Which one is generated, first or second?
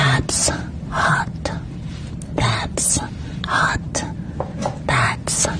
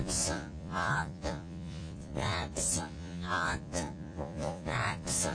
second